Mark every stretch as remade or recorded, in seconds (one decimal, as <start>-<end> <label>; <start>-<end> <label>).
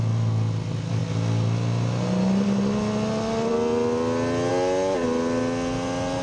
0.0-6.2 recorded